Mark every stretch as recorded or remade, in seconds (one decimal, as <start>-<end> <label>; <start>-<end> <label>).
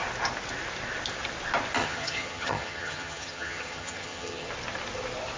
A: 0.0-1.8 recorded; 1.8-4.5 remade; 4.5-5.4 recorded